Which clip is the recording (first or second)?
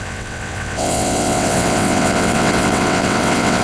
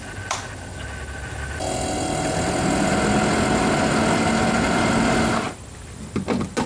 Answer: second